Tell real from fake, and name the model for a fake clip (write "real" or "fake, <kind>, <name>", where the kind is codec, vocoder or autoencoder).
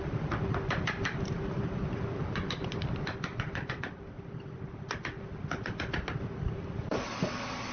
real